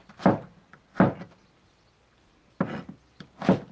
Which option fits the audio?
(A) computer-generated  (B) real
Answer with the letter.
B